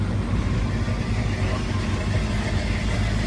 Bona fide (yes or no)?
yes